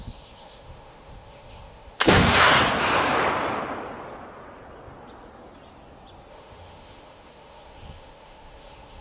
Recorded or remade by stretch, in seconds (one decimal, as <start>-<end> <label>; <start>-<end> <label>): 0.0-2.5 remade; 2.5-6.3 recorded; 6.3-9.0 remade